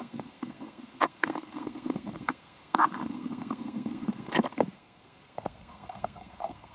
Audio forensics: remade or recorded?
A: remade